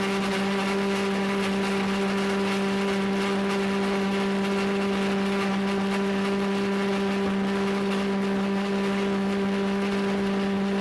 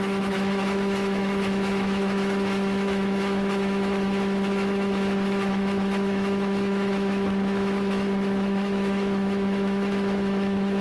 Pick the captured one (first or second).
first